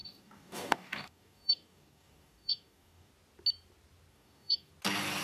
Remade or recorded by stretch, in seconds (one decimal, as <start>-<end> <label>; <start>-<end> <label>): 0.0-3.1 remade; 3.1-4.1 recorded; 4.1-4.7 remade; 4.7-5.2 recorded